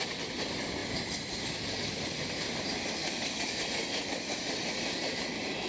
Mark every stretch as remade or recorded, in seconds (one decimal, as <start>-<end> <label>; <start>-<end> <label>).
0.0-0.8 recorded; 0.8-2.6 remade; 2.6-3.0 recorded; 3.0-3.6 remade; 3.6-5.7 recorded